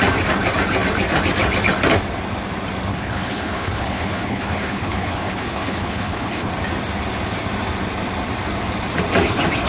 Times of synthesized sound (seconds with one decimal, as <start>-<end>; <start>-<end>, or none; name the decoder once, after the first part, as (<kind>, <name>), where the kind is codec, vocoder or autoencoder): 2.9-6.5 (codec, HILCodec)

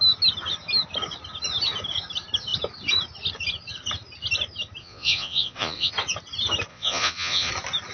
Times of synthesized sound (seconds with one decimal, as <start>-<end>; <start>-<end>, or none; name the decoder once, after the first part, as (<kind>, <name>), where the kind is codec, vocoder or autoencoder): 4.8-5.9 (vocoder, Vocos); 6.7-7.5

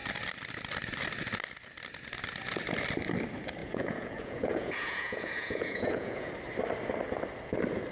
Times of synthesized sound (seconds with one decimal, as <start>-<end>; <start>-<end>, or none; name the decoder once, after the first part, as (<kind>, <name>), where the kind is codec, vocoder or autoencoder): 3.6-6.3 (vocoder, Vocos)

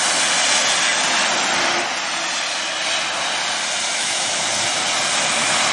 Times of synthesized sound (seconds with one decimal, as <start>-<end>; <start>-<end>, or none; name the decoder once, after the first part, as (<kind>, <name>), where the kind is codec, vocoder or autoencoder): 3.9-4.4 (autoencoder, DAC-VAE)